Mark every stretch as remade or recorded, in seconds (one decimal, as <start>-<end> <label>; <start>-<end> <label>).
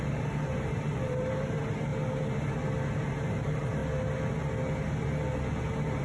0.0-1.9 remade; 1.9-3.3 recorded; 3.3-3.8 remade; 3.8-6.0 recorded